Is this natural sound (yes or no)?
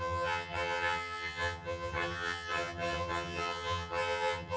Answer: no